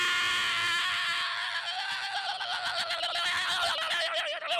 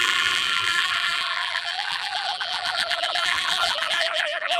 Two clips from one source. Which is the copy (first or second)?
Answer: second